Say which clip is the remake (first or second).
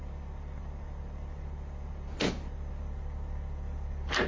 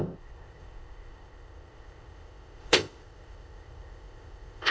second